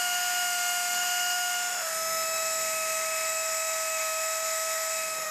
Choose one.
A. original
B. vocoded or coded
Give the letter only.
B